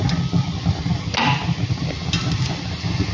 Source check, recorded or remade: recorded